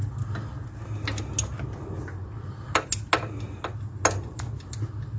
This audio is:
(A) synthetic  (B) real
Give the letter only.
B